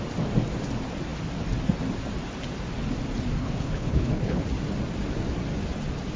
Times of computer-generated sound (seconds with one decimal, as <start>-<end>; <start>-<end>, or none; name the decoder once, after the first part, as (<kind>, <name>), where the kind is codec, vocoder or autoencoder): 3.4-4.4 (codec, HILCodec)